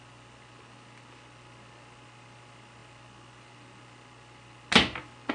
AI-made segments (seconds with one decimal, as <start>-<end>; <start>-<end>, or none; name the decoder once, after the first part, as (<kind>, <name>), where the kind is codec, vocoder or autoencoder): none